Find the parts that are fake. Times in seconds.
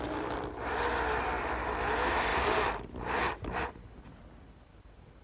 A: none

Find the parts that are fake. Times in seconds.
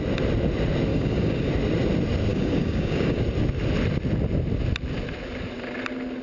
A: 0.9-1.5 (codec, DAC); 2.3-3.2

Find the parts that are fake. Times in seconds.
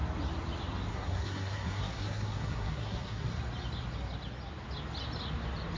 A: 0.9-3.3 (codec, SNAC)